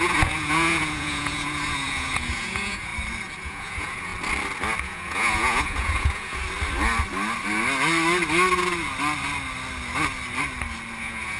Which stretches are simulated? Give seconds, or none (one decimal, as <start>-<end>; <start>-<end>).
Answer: 0.0-2.9; 3.4-4.1; 4.8-6.4; 11.0-11.4